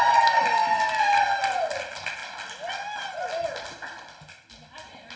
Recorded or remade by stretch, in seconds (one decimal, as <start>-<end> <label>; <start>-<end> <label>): 0.0-5.2 recorded